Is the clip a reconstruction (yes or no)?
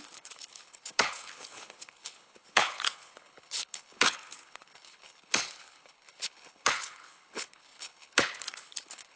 yes